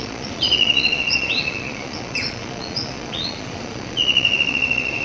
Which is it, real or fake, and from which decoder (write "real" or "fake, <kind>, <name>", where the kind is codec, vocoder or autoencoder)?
fake, vocoder, Vocos